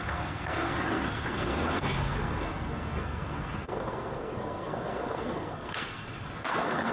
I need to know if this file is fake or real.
fake